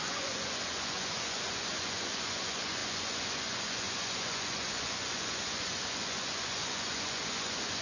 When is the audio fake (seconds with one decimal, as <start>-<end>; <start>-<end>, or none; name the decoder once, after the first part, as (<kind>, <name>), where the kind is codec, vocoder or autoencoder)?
0.0-7.8 (vocoder, Vocos)